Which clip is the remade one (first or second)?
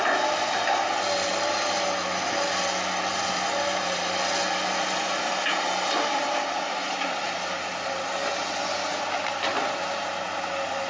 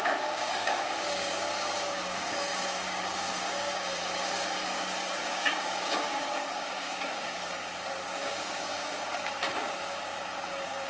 second